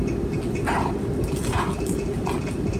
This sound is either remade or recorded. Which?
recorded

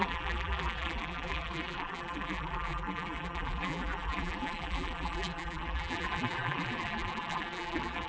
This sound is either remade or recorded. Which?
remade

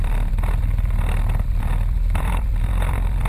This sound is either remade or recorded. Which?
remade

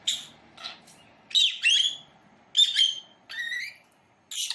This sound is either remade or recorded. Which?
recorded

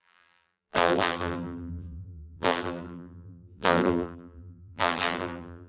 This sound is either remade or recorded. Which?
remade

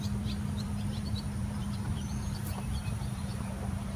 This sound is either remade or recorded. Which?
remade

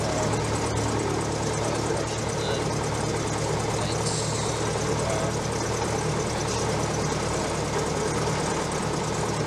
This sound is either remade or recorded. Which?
recorded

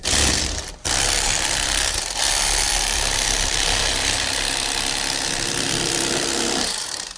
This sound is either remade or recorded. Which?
remade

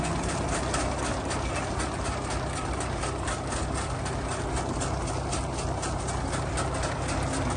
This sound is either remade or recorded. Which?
recorded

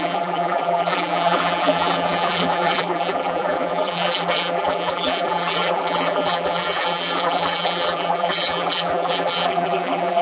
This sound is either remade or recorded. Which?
remade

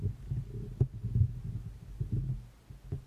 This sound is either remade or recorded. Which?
remade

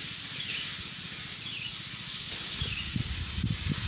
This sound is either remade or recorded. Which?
recorded